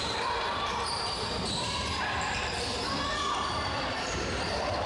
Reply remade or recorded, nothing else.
remade